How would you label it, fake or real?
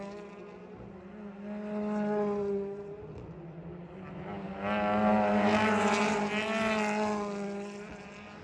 real